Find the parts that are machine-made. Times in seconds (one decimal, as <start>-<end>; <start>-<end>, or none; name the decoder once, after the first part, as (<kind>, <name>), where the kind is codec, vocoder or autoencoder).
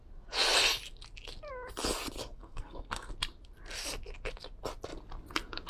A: 2.2-3.1 (codec, SNAC)